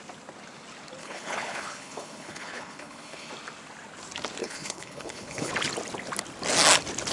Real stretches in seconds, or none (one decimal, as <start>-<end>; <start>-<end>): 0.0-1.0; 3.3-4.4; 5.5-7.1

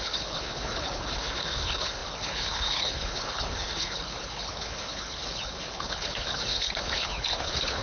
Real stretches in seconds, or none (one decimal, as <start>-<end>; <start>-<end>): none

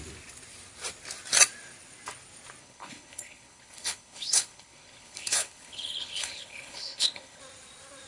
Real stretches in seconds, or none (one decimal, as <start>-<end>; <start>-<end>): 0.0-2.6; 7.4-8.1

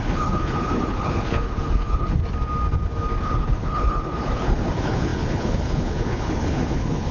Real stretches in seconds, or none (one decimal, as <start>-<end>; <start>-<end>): 2.2-3.2

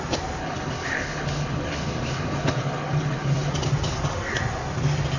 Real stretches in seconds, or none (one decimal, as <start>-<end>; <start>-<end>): 0.0-0.4; 3.5-5.2

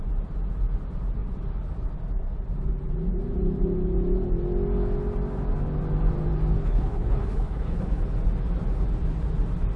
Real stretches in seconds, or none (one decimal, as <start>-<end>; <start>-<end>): 0.0-6.6; 8.0-9.8